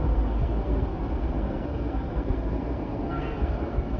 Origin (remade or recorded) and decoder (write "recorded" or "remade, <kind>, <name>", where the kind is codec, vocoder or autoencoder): remade, codec, SNAC